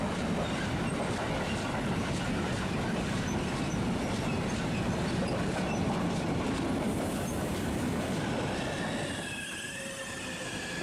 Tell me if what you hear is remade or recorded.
recorded